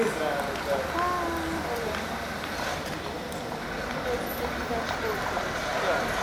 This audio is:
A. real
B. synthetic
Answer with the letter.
A